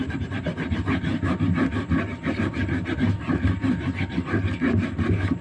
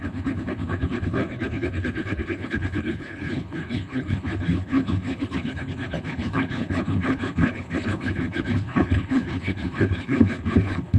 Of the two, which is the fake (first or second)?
second